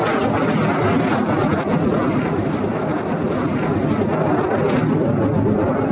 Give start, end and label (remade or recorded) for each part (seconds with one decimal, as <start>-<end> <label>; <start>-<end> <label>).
0.0-2.0 recorded; 2.0-2.8 remade; 2.8-5.9 recorded